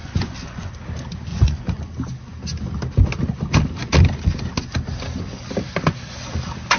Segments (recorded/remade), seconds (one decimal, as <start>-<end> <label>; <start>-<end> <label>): 0.0-0.7 remade; 0.7-1.3 recorded; 1.3-1.8 remade; 1.8-6.8 recorded